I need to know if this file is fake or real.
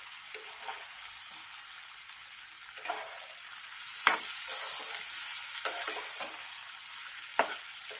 real